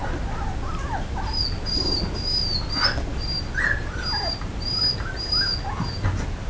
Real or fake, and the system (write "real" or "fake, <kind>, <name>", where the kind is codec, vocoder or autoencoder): real